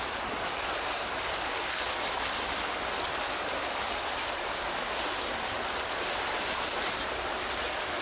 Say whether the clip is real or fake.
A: real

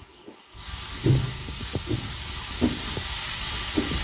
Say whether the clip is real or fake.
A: fake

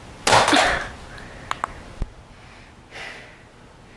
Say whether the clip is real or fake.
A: real